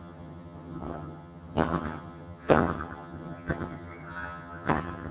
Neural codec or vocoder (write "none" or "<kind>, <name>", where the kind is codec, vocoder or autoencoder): vocoder, HiFi-GAN